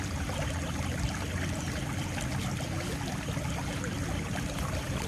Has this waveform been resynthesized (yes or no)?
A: no